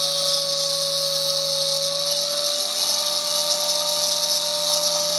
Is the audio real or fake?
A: real